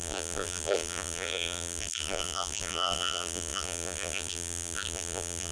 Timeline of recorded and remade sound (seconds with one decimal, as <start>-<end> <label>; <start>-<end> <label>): 0.0-5.5 remade